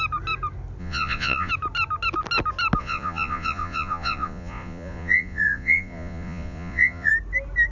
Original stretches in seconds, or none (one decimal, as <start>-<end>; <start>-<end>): 0.0-0.8; 1.5-2.8; 7.1-7.7